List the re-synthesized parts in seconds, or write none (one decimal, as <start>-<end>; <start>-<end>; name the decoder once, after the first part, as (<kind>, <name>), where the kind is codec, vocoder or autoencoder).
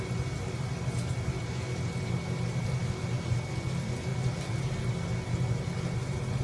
4.1-4.7 (vocoder, BigVGAN v2)